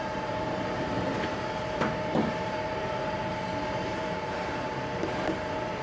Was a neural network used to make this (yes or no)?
yes